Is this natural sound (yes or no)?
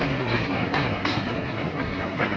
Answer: no